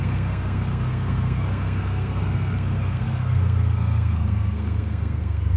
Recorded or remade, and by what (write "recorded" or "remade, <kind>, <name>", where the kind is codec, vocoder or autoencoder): remade, codec, SNAC